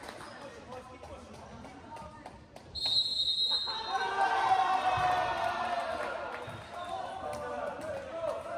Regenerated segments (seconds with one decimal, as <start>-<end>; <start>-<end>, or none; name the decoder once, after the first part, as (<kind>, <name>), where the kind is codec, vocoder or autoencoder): none